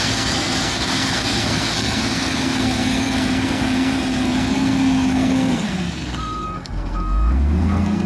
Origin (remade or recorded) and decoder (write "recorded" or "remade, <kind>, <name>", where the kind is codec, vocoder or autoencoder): remade, codec, SNAC